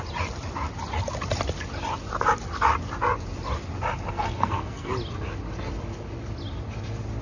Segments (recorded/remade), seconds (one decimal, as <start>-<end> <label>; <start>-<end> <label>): 0.0-4.1 recorded; 4.1-4.9 remade; 4.9-7.2 recorded

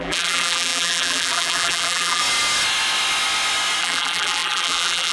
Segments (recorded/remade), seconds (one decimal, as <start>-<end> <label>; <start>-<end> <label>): 0.0-2.2 remade; 2.2-3.8 recorded; 3.8-5.1 remade

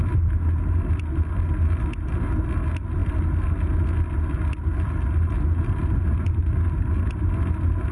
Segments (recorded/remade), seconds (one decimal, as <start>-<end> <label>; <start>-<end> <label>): 0.0-7.9 recorded

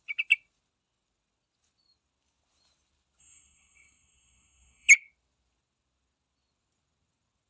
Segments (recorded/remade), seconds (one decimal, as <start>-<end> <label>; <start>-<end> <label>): 0.0-3.2 recorded; 3.2-4.9 remade; 4.9-7.5 recorded

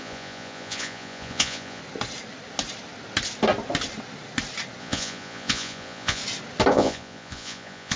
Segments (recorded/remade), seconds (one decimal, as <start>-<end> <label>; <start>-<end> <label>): 0.0-1.8 remade; 1.8-4.8 recorded; 4.8-6.2 remade; 6.2-6.7 recorded; 6.7-8.0 remade

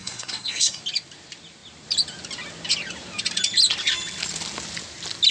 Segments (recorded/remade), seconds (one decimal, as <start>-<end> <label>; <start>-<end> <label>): 0.0-0.8 remade; 0.8-5.3 recorded

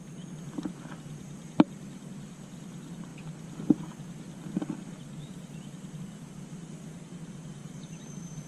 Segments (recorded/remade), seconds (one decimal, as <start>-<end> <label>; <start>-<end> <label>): 0.0-1.4 recorded; 1.4-2.0 remade; 2.0-7.6 recorded; 7.6-8.1 remade; 8.1-8.5 recorded

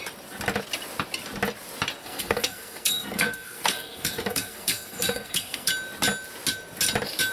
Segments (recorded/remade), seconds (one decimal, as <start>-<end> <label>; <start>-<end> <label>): 0.0-2.0 recorded; 2.0-5.7 remade; 5.7-7.3 recorded